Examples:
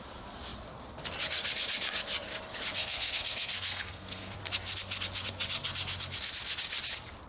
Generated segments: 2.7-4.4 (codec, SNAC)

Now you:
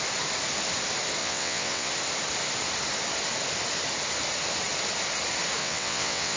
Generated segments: 1.2-1.9 (vocoder, WaveNeXt); 5.6-6.4